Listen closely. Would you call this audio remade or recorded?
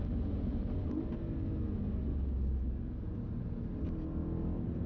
recorded